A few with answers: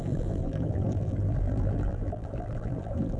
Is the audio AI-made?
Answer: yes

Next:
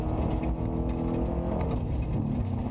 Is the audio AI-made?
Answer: no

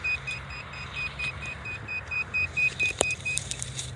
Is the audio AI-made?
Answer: yes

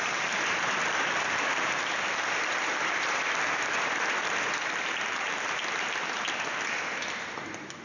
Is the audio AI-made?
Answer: yes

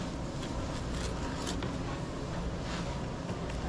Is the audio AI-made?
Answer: no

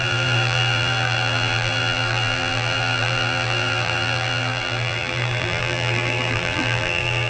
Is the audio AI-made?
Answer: yes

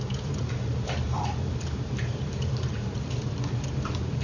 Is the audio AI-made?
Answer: yes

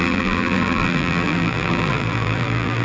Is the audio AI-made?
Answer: yes